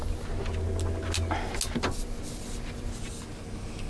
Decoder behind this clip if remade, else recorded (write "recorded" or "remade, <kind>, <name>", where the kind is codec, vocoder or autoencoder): recorded